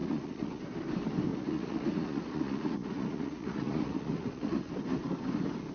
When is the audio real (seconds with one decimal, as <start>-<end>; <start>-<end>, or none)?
0.6-1.3; 4.7-5.7